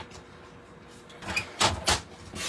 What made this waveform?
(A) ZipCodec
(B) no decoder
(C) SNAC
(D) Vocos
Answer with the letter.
B